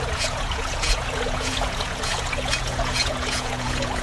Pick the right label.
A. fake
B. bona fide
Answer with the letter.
A